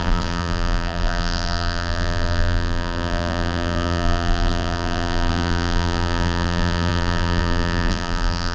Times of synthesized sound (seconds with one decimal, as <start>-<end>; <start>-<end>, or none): 0.0-8.5